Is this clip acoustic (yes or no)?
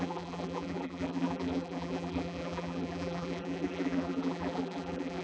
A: no